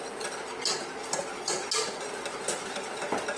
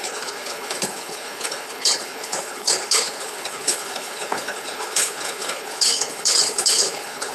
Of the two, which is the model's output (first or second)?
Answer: second